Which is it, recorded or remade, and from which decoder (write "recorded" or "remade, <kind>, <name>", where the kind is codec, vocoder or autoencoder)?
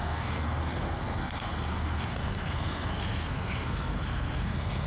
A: remade, codec, SNAC